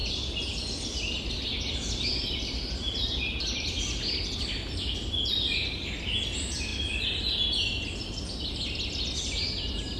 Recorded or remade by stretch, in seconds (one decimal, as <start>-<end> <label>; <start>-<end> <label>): 0.0-10.0 recorded